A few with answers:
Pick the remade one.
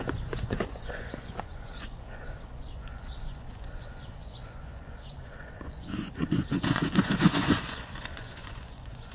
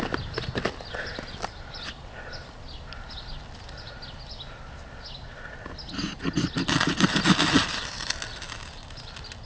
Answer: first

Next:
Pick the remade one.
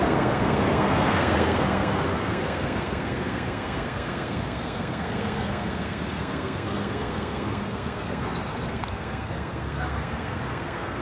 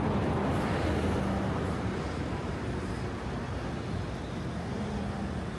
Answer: first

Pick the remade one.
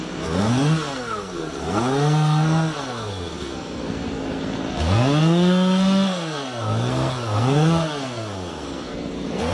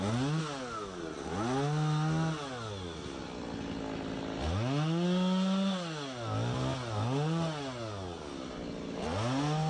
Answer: first